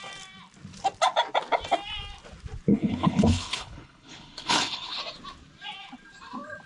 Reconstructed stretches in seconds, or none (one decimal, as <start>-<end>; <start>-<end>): 2.7-5.0